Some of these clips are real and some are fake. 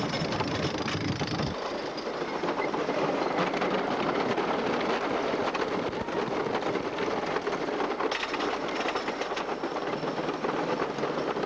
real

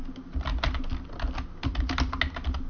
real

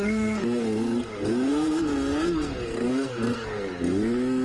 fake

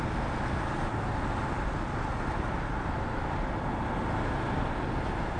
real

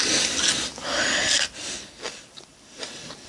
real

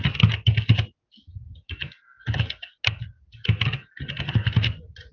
real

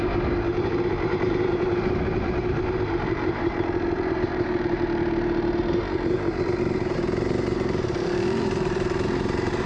fake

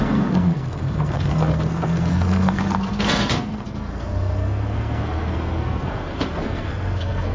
fake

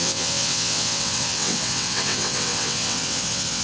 fake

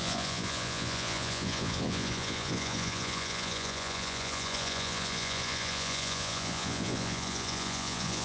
fake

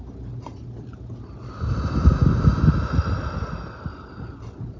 real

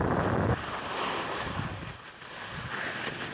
real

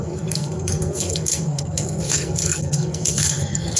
fake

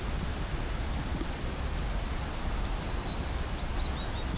real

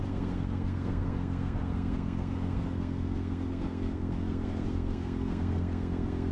fake